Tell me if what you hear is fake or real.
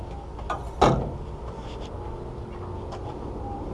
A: real